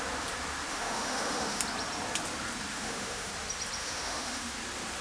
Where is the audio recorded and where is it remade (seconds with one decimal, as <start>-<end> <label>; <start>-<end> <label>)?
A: 0.0-0.7 recorded; 0.7-1.6 remade; 1.6-2.7 recorded; 2.7-3.3 remade; 3.3-3.8 recorded; 3.8-4.5 remade; 4.5-5.0 recorded